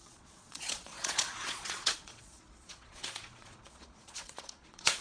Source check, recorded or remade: remade